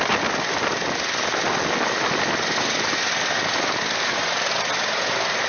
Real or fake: real